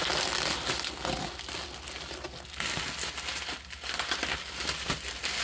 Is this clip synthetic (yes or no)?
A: no